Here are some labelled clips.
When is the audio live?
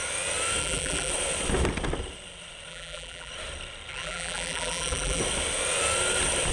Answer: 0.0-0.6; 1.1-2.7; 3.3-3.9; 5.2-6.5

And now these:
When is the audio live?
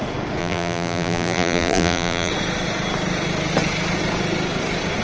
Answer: 0.0-0.4; 2.3-5.0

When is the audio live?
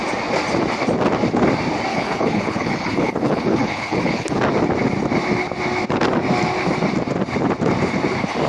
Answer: 0.0-1.9; 4.4-8.5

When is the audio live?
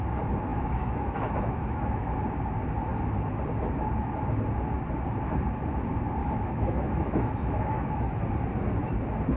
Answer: 0.0-0.5; 2.2-6.2; 8.2-9.4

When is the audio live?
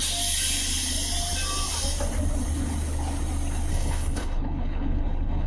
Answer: 0.0-3.7